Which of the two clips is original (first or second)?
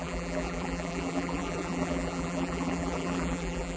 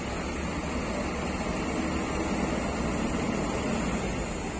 second